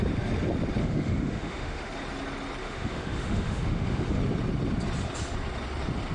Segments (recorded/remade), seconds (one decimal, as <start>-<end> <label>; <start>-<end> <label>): 0.0-0.8 recorded; 0.8-1.9 remade; 1.9-2.6 recorded; 2.6-4.2 remade; 4.2-6.1 recorded